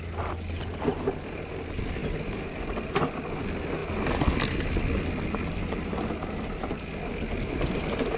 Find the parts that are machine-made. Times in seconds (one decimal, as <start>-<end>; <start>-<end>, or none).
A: 2.0-3.0